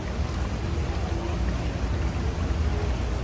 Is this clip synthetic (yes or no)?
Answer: no